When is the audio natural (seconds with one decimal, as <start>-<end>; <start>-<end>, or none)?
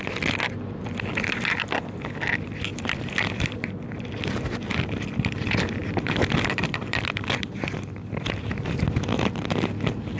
0.0-2.7; 3.8-5.8; 8.5-10.2